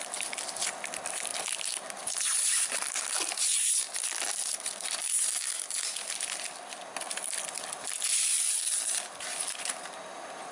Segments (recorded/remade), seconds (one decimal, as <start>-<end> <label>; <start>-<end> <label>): 0.0-10.5 recorded